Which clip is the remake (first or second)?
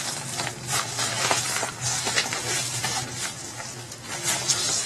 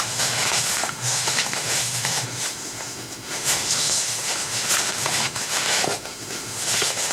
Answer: second